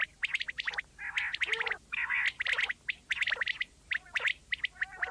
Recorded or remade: recorded